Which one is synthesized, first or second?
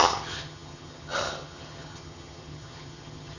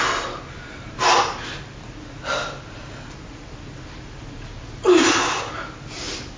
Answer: first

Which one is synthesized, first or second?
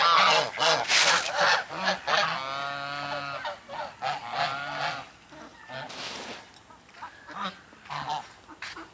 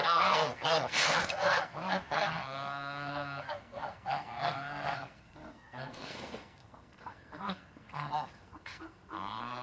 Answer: second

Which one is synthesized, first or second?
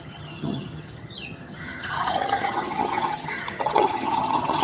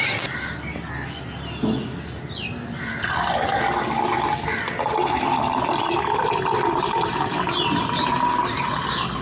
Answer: first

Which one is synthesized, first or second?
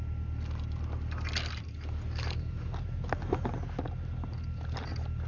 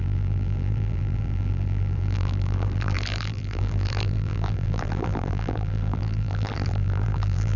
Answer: second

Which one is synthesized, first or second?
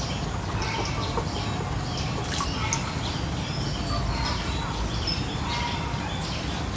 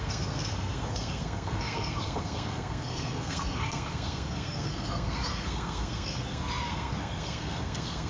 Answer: second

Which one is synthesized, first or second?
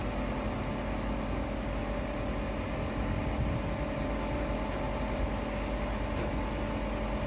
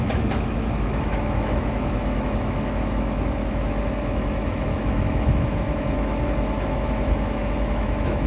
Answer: second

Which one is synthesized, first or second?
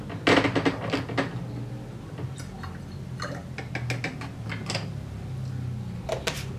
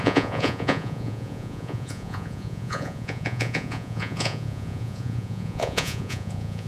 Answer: second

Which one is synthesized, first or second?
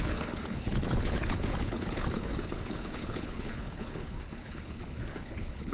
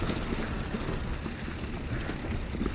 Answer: first